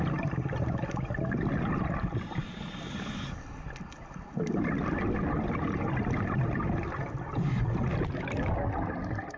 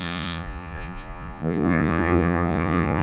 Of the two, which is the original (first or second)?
first